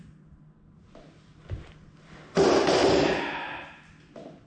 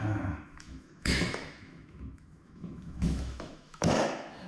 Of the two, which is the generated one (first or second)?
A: second